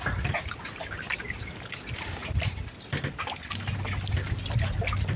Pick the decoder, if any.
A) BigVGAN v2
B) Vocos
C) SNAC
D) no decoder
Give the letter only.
D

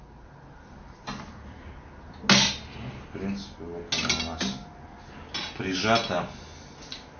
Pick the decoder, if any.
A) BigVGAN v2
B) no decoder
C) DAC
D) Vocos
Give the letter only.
B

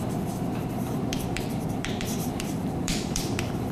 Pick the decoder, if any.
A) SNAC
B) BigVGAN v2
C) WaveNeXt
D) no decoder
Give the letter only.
B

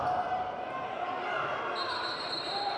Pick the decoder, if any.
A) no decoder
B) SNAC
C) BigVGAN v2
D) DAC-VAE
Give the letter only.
A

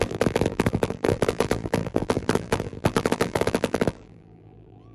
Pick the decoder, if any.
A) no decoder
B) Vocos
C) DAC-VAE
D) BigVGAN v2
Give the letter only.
D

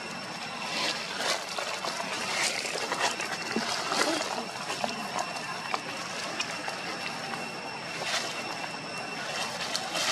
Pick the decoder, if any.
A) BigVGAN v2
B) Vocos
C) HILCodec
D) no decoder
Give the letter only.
D